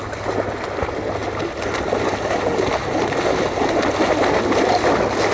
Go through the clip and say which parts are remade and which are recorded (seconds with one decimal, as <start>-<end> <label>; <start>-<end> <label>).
0.0-5.3 recorded